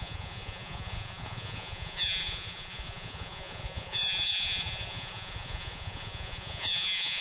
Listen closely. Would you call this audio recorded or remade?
remade